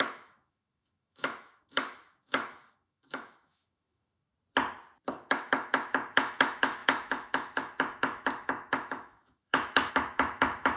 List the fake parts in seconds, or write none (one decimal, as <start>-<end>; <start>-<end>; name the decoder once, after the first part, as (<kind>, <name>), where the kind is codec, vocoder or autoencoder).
0.0-4.3 (autoencoder, DAC-VAE); 5.1-10.8